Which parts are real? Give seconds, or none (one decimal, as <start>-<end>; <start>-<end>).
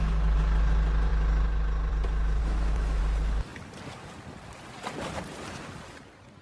0.0-2.4; 3.0-6.4